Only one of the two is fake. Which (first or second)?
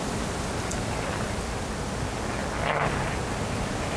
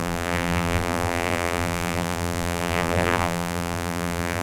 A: second